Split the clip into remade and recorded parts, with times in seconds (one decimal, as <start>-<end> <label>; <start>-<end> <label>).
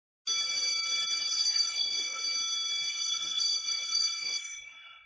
0.0-1.3 recorded; 1.3-2.2 remade; 2.2-2.9 recorded; 2.9-5.1 remade